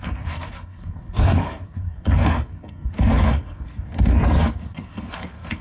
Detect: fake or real fake